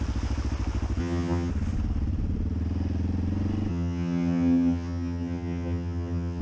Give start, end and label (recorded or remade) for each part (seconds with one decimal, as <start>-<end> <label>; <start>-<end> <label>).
0.0-1.0 recorded; 1.0-1.5 remade; 1.5-3.7 recorded; 3.7-6.4 remade